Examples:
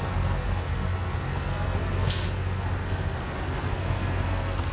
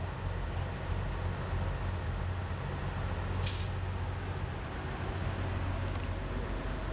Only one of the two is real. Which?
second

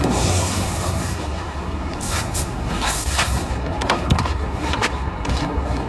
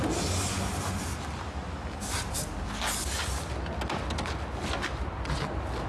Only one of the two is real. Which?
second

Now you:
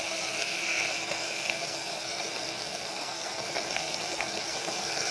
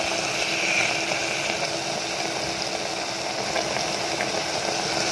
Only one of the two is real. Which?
second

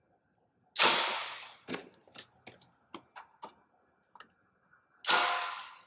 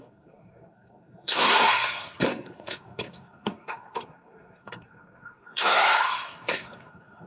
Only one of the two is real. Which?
first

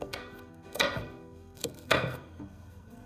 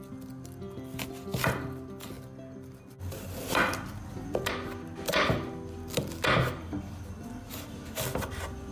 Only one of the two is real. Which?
second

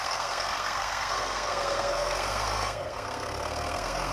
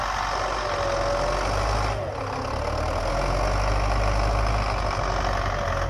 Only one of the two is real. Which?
second